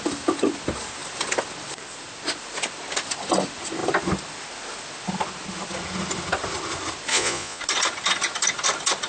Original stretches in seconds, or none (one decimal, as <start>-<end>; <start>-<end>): 0.0-7.1; 7.6-9.1